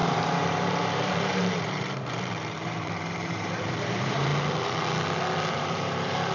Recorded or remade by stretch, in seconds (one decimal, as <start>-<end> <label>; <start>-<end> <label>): 0.0-4.3 remade; 4.3-5.5 recorded; 5.5-6.3 remade